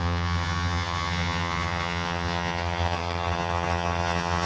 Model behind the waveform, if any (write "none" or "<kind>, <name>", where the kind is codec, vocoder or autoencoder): vocoder, HiFi-GAN